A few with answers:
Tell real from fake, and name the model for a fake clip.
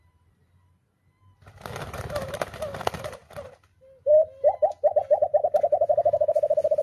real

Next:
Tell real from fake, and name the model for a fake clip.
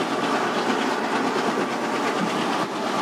real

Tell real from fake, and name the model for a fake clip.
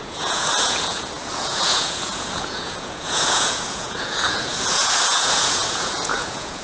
fake, vocoder, Vocos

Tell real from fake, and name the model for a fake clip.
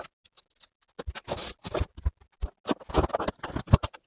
real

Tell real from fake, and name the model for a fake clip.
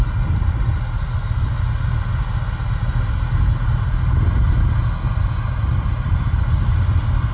real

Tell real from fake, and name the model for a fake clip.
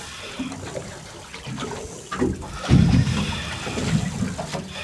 real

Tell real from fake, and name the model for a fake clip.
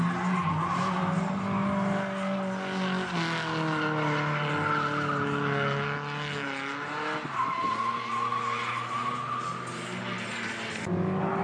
real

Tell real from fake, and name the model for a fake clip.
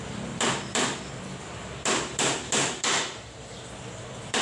fake, vocoder, BigVGAN v2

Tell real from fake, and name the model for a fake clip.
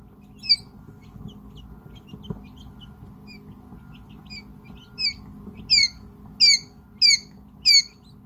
real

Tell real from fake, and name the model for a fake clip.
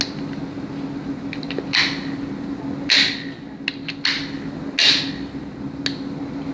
real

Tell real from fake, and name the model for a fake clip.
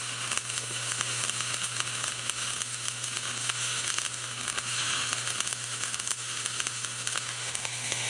fake, autoencoder, DAC-VAE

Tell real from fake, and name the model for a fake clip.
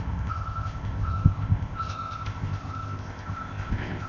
fake, codec, ZipCodec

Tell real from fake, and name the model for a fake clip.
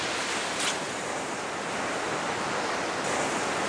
real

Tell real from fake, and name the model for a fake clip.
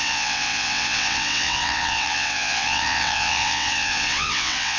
fake, vocoder, WaveNeXt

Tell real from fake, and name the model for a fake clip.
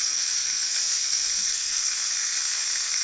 fake, codec, SNAC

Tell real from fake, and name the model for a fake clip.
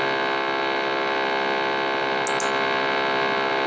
real